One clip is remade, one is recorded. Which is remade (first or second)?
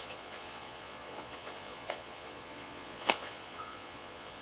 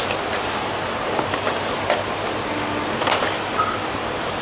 first